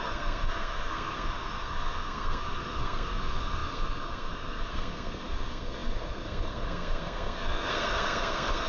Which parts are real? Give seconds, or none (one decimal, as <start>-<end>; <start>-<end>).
none